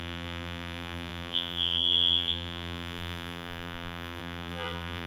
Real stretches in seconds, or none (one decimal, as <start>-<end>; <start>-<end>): none